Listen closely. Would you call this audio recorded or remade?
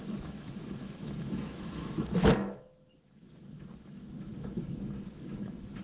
remade